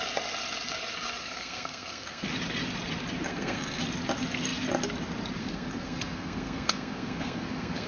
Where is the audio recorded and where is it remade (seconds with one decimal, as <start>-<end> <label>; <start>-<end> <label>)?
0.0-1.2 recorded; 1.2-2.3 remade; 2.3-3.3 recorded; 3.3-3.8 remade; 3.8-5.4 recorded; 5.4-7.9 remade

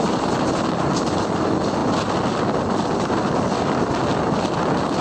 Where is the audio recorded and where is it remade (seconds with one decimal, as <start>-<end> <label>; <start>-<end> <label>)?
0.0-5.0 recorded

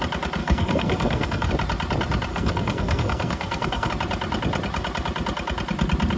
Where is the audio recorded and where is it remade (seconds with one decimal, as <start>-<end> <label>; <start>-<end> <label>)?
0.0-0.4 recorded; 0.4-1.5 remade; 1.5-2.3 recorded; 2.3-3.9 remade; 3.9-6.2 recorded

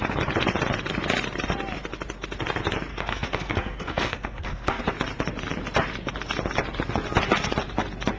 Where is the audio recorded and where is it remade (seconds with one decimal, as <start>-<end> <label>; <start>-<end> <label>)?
0.0-2.9 recorded; 2.9-4.8 remade; 4.8-8.2 recorded